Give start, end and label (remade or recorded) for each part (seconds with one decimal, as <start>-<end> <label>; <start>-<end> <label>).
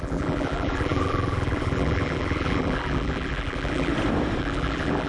0.0-3.9 remade; 3.9-4.4 recorded; 4.4-5.1 remade